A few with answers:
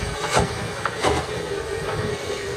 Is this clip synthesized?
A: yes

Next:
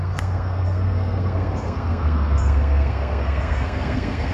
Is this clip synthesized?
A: yes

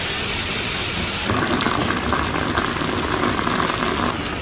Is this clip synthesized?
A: no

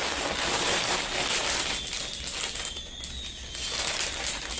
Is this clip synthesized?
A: no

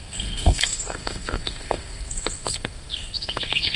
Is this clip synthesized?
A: yes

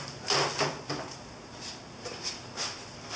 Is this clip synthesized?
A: no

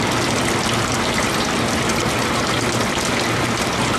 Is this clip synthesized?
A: no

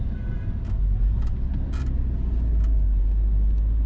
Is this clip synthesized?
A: no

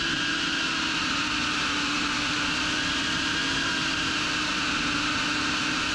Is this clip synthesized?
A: no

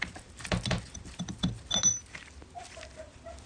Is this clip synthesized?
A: no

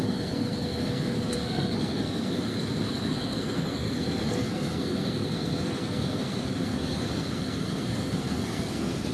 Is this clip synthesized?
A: yes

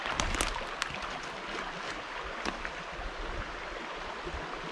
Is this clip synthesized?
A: no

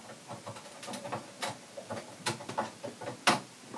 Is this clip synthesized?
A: no